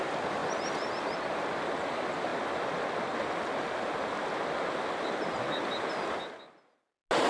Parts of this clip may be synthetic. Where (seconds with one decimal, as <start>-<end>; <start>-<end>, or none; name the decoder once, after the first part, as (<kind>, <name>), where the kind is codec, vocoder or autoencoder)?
none